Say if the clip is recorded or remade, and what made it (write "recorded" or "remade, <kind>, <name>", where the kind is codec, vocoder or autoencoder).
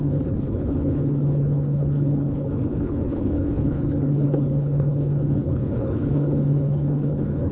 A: remade, codec, HILCodec